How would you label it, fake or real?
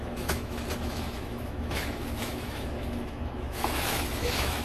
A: fake